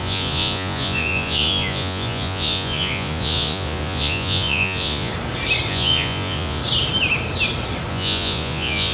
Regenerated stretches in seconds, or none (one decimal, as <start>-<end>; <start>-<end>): 0.0-5.1; 5.7-6.6; 7.9-8.9